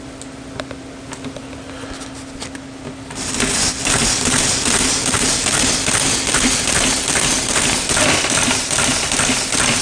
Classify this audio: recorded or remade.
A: recorded